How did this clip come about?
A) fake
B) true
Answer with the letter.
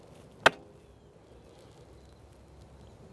B